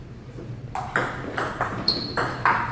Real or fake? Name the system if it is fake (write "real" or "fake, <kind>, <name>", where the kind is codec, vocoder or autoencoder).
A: fake, vocoder, BigVGAN v2